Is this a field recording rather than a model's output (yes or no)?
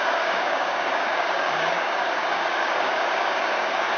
no